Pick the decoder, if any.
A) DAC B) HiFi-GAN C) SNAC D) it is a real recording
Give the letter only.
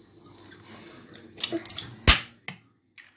D